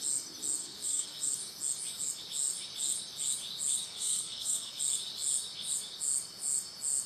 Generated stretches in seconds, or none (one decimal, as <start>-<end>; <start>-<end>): 0.6-1.3; 3.8-4.8